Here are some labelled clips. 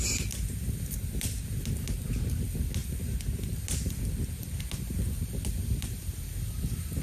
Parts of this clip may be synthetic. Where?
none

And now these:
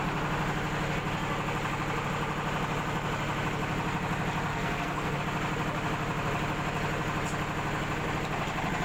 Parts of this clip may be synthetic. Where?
4.5-5.2

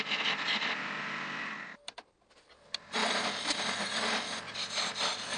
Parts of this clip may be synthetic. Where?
none

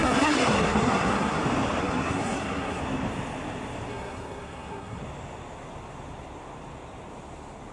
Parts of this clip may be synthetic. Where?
0.0-1.4; 1.8-2.8; 3.9-5.0

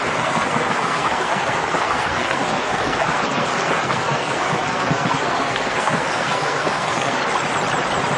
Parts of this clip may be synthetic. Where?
0.0-7.2

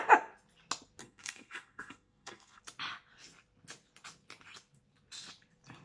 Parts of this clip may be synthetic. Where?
1.0-2.6

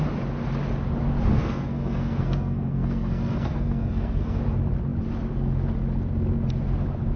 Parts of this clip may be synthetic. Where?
1.3-4.4